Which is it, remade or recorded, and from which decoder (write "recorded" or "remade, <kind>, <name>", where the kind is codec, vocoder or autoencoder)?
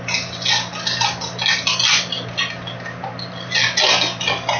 recorded